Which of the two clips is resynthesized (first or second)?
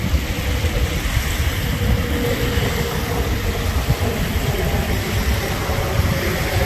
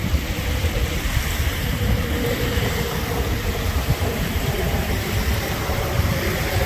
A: second